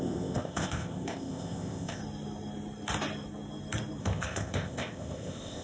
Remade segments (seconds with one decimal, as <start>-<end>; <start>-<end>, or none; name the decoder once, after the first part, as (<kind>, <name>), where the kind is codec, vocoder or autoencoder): 0.0-2.0 (codec, ZipCodec); 4.0-5.6

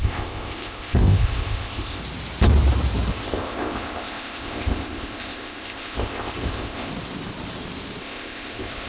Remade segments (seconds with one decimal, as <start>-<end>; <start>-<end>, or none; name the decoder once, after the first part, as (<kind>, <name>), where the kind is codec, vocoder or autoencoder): 0.0-2.0 (codec, ZipCodec); 3.1-6.9; 8.0-8.9

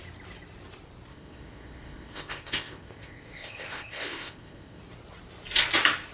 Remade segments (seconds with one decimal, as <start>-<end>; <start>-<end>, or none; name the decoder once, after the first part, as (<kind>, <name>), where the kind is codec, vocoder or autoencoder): 1.1-4.8 (codec, ZipCodec)

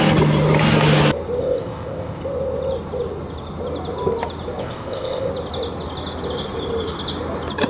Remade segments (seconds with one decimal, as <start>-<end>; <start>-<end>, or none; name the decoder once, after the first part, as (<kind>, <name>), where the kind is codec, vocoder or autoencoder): 1.4-2.2 (codec, ZipCodec); 4.6-5.3

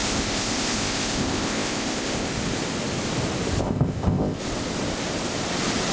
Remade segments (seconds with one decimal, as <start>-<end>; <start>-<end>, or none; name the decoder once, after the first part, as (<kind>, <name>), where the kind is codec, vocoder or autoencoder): 0.0-2.3 (codec, ZipCodec); 3.6-4.4

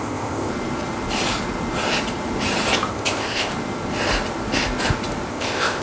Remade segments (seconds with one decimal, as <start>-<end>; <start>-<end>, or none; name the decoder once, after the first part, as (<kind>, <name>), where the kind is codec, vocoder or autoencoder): 0.0-0.5 (codec, ZipCodec); 2.9-3.5; 5.3-5.8

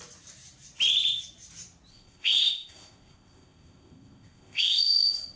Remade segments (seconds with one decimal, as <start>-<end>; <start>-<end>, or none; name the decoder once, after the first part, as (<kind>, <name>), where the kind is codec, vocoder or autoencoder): 1.9-5.4 (codec, ZipCodec)